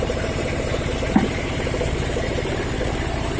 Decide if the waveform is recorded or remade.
remade